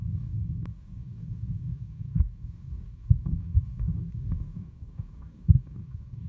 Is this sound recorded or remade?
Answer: remade